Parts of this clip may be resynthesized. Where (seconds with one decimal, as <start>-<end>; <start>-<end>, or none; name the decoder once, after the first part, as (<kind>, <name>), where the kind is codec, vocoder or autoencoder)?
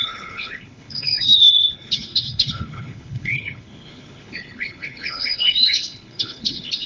0.0-6.9 (codec, HILCodec)